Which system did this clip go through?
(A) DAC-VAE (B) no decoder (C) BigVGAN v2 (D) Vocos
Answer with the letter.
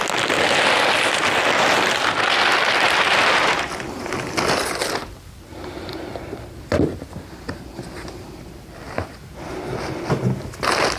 B